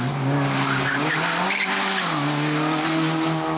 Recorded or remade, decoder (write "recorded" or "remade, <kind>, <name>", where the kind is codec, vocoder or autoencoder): recorded